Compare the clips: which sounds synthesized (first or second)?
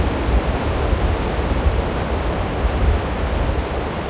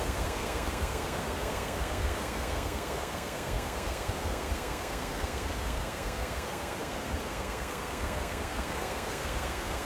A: second